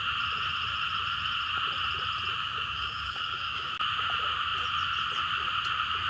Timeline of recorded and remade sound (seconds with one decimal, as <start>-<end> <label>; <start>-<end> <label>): 0.0-2.4 recorded; 2.4-3.7 remade; 3.7-6.1 recorded